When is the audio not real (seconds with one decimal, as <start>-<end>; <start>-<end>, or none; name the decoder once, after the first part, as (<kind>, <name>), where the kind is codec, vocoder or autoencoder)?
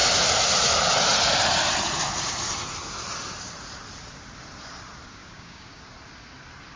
5.2-5.8 (codec, DAC)